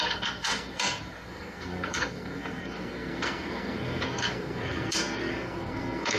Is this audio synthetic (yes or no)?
yes